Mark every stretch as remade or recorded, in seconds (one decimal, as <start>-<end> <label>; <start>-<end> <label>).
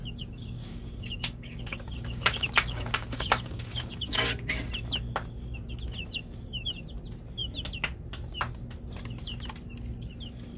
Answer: 0.0-4.7 remade; 4.7-10.6 recorded